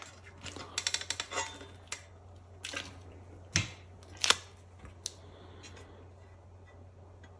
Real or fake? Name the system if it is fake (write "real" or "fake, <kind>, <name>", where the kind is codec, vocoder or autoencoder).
real